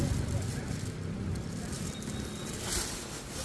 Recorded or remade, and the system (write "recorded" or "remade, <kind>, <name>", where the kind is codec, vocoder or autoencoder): recorded